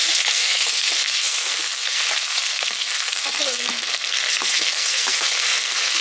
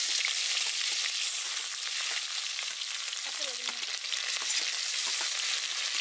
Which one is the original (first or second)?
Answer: second